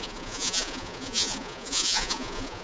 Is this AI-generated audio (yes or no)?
yes